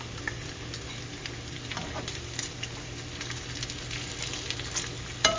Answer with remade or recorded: recorded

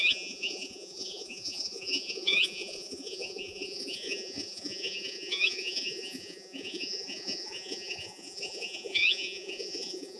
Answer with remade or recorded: remade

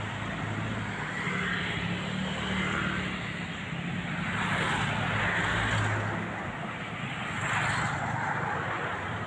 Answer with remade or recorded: recorded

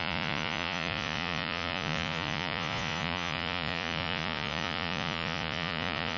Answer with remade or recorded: remade